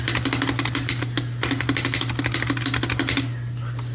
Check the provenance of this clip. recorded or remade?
recorded